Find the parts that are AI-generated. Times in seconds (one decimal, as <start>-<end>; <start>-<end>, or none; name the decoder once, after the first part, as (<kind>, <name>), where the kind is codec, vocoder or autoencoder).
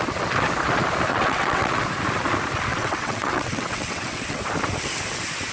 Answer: 1.1-1.8 (vocoder, WaveNeXt); 2.7-4.4